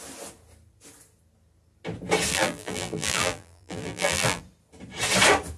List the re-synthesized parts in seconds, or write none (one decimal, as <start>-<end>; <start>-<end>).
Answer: 2.3-4.4